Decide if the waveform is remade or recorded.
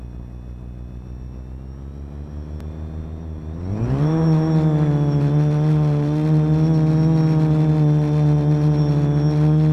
recorded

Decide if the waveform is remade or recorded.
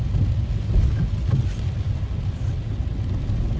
recorded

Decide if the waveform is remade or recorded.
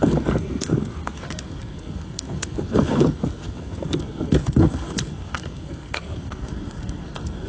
remade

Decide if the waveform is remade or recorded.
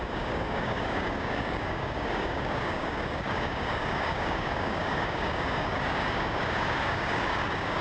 remade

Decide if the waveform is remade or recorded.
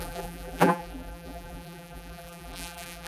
remade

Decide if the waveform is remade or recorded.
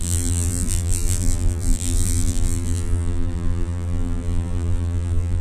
remade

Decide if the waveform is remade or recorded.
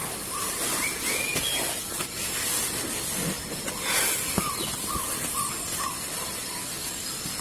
recorded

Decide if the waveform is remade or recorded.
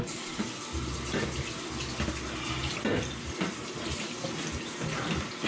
recorded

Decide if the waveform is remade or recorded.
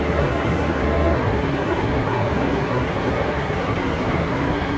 remade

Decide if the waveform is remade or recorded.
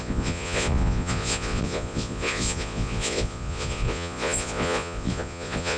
remade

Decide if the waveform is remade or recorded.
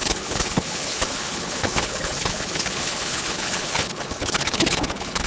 remade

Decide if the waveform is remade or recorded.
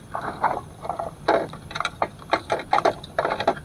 remade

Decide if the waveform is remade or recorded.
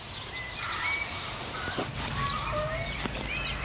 recorded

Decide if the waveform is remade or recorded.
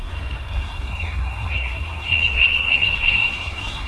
remade